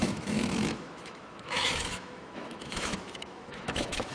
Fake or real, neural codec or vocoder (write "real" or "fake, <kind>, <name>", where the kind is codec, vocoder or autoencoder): fake, autoencoder, DAC-VAE